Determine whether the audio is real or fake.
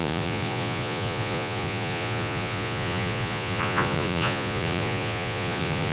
fake